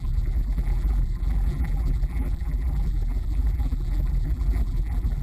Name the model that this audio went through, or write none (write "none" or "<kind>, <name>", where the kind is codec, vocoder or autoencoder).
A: vocoder, BigVGAN v2